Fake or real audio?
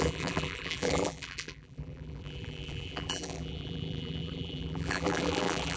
fake